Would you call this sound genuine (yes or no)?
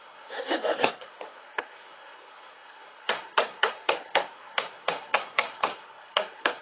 no